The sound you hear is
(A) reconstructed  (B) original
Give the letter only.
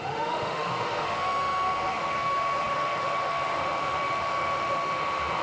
A